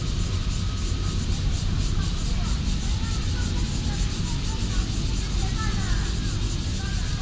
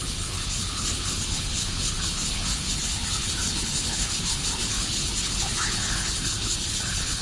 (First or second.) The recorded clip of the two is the first